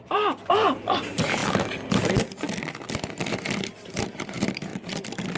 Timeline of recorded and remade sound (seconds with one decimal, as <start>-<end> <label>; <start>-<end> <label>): 0.0-1.4 remade; 1.4-3.9 recorded; 3.9-4.7 remade; 4.7-5.4 recorded

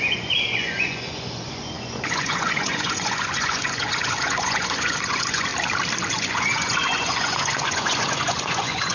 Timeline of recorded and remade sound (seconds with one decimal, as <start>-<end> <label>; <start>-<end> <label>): 0.0-5.5 remade; 5.5-6.1 recorded; 6.1-8.9 remade

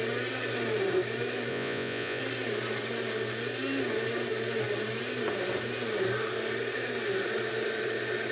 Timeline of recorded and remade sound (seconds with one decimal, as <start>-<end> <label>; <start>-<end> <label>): 0.0-1.5 recorded; 1.5-2.2 remade; 2.2-8.3 recorded

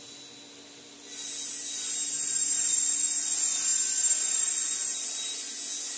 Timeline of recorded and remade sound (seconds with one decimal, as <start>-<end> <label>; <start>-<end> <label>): 0.0-6.0 recorded

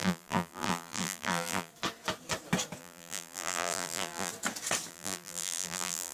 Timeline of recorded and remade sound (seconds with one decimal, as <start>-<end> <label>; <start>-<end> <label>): 0.0-1.7 remade; 1.7-2.8 recorded; 2.8-4.3 remade; 4.3-4.9 recorded; 4.9-6.1 remade

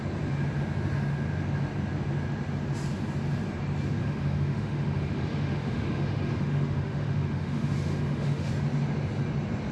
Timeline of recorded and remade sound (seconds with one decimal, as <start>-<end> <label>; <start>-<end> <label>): 0.0-4.0 recorded; 4.0-8.5 remade; 8.5-9.7 recorded

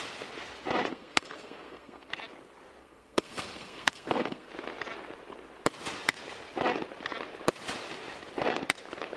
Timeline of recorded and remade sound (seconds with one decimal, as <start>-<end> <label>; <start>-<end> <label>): 0.0-0.9 recorded; 0.9-2.1 remade; 2.1-2.8 recorded; 2.8-4.5 remade; 4.5-9.2 recorded

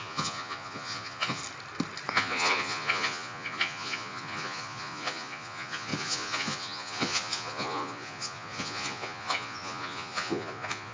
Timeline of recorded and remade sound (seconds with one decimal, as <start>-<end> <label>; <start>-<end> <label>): 0.0-1.4 remade; 1.4-2.1 recorded; 2.1-10.9 remade